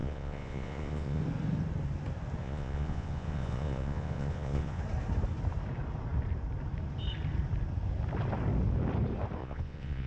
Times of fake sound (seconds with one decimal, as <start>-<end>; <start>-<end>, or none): 0.0-1.2; 2.4-4.8; 9.4-10.1